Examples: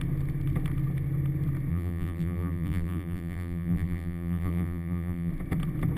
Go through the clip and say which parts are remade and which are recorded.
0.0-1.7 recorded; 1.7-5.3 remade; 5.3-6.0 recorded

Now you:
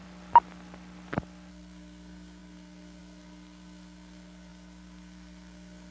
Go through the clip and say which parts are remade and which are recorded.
0.0-1.5 recorded; 1.5-5.9 remade